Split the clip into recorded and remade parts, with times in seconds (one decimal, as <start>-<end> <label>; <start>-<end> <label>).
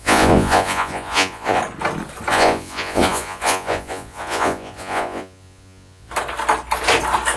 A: 0.0-1.6 remade; 1.6-2.3 recorded; 2.3-6.1 remade; 6.1-7.4 recorded